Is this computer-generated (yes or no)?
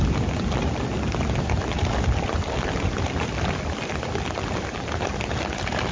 no